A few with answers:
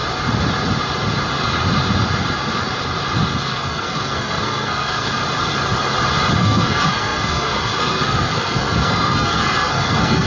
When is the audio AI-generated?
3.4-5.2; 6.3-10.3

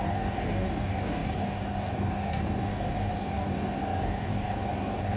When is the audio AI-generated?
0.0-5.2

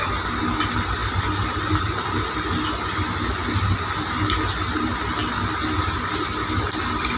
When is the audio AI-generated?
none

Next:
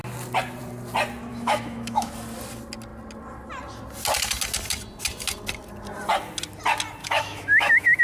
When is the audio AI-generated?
1.3-2.1; 7.0-8.0

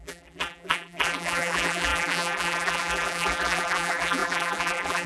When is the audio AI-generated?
0.0-5.1

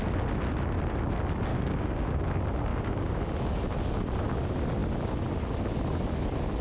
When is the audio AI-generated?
1.5-2.2; 2.7-3.3